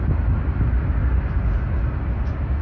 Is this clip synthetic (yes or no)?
no